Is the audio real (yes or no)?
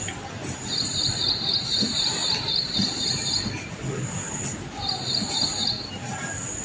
yes